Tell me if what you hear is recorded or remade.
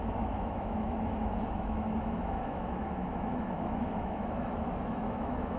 remade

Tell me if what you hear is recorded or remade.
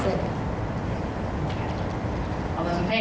recorded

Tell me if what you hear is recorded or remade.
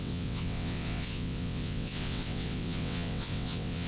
remade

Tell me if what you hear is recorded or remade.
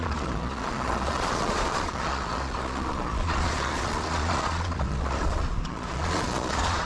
remade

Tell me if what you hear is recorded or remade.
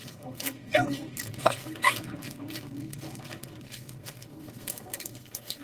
remade